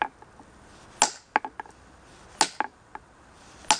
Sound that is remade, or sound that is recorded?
recorded